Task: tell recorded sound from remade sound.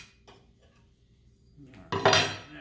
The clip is recorded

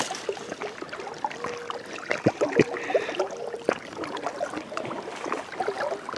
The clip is recorded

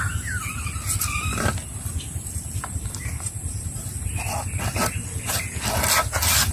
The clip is recorded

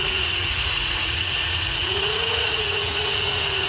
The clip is remade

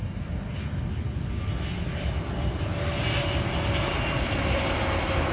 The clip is recorded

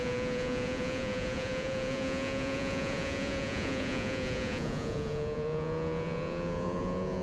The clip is remade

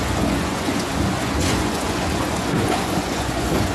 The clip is remade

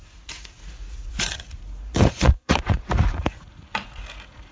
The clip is remade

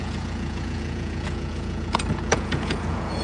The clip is remade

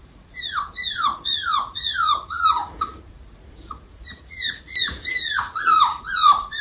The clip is remade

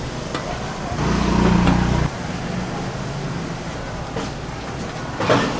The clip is recorded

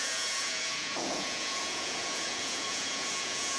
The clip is remade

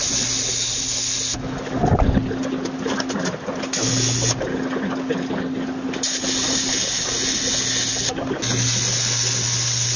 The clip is recorded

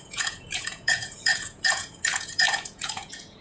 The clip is remade